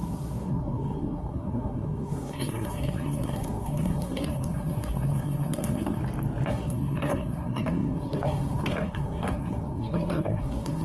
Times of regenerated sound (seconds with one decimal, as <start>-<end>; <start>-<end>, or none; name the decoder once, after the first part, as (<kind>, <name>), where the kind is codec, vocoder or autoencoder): 0.0-6.0 (codec, SNAC); 6.5-10.8